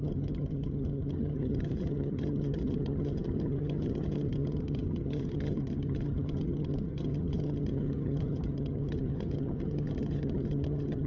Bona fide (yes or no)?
no